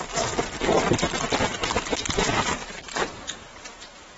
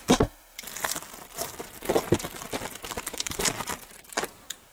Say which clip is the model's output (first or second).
second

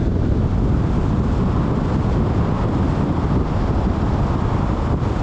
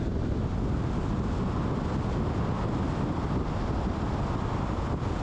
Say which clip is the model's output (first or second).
first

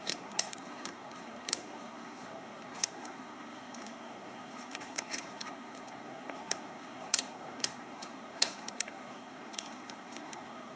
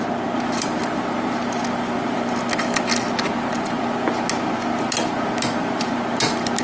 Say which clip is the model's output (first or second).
first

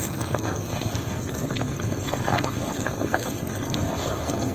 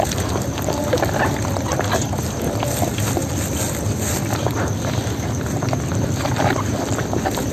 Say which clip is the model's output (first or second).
first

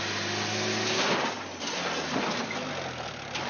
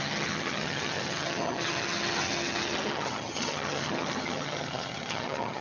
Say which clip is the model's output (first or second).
second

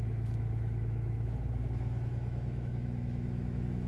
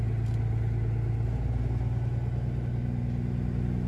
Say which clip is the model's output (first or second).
first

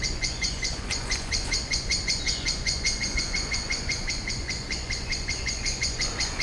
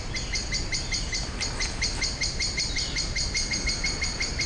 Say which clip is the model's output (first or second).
first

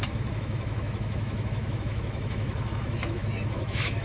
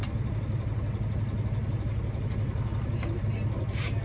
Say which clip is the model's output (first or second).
first